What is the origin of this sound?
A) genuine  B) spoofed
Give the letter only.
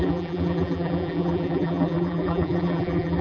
B